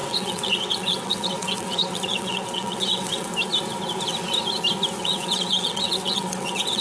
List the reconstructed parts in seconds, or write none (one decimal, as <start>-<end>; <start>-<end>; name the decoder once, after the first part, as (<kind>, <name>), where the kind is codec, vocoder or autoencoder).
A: 0.0-3.3 (vocoder, WaveNeXt); 5.0-6.8